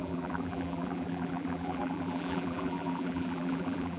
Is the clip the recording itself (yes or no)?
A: no